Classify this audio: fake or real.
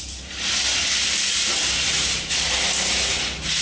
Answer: real